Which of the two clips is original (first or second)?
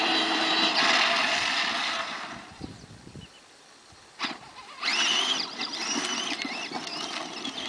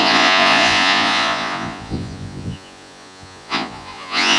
first